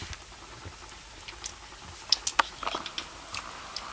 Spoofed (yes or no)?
no